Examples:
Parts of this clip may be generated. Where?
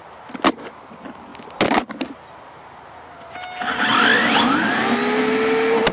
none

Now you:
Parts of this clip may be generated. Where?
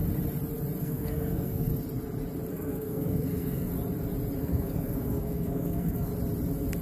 0.8-1.7 (codec, SNAC); 2.5-3.7; 4.4-6.1